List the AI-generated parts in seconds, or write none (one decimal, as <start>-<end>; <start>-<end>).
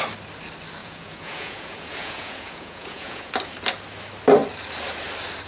0.8-3.3